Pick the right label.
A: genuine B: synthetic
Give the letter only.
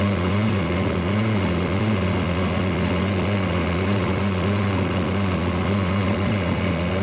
B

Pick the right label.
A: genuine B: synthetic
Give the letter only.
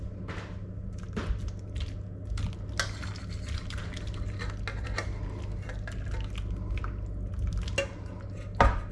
A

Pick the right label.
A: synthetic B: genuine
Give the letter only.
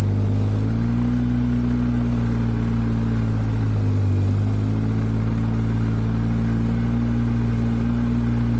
B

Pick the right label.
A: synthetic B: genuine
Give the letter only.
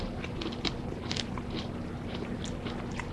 B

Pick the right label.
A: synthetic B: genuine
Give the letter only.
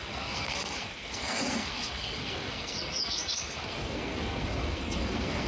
A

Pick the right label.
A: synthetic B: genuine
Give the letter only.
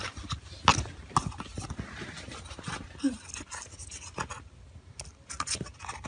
B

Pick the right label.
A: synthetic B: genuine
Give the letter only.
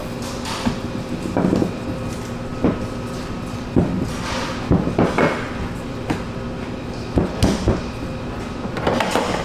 B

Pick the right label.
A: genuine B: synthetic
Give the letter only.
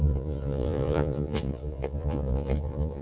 B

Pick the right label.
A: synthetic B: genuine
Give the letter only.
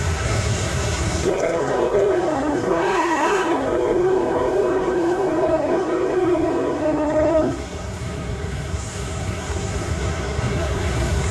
A